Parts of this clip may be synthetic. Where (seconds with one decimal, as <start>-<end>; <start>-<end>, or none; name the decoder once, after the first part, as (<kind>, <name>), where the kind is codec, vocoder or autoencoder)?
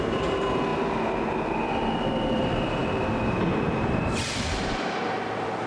none